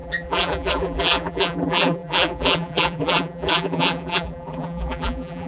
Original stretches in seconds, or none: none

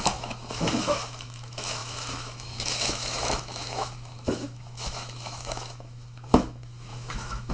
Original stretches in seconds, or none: none

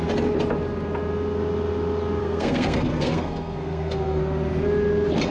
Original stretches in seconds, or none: 0.0-2.2; 4.2-5.3